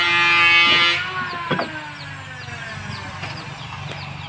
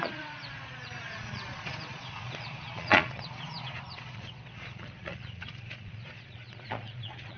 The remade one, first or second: second